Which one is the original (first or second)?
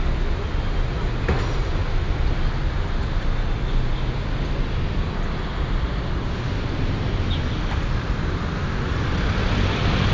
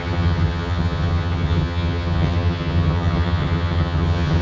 first